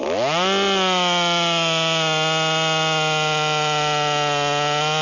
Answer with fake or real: real